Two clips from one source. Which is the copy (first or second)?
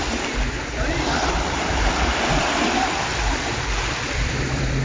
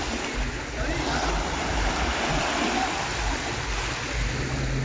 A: first